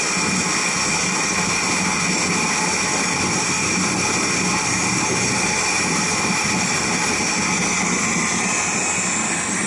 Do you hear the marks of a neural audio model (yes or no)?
no